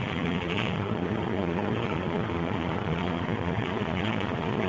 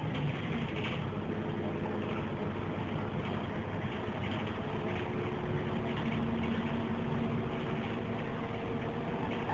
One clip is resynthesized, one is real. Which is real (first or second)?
second